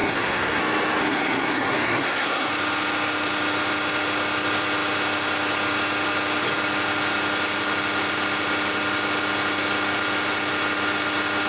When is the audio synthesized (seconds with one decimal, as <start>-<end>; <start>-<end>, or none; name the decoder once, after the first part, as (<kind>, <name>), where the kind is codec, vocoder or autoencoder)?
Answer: 0.0-0.6 (codec, SNAC); 1.0-2.5